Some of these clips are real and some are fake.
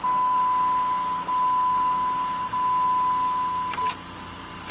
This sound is real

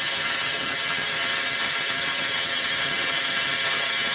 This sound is fake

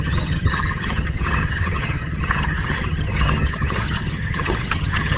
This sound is fake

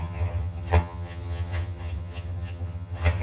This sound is fake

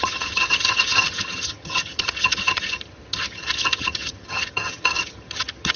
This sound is fake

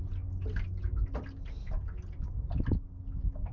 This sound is real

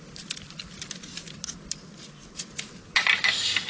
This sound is real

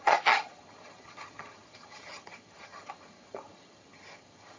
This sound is fake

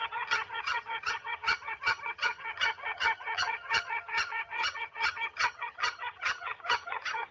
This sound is fake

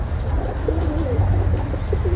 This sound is real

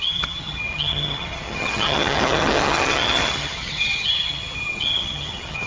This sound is fake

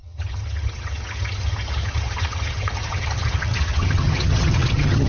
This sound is fake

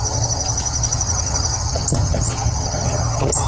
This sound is fake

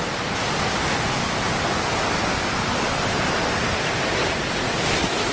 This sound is real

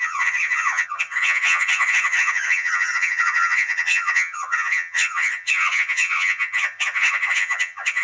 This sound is fake